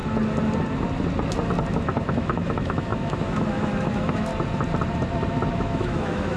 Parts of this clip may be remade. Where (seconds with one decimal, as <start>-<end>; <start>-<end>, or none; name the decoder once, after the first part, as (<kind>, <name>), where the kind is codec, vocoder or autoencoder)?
1.7-4.3 (autoencoder, DAC-VAE); 5.5-6.4